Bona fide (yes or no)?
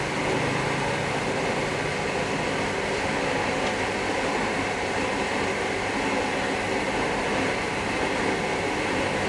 yes